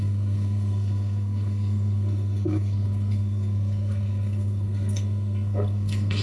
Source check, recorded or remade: remade